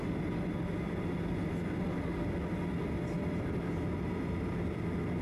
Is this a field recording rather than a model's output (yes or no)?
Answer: yes